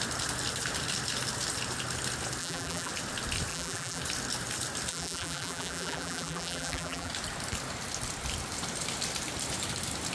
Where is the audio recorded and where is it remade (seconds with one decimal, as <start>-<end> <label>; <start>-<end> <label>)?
0.0-2.4 recorded; 2.4-2.9 remade; 2.9-3.5 recorded; 3.5-4.0 remade; 4.0-4.9 recorded; 4.9-7.1 remade; 7.1-10.1 recorded